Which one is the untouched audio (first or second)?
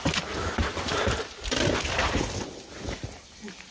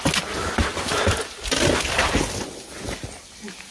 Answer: second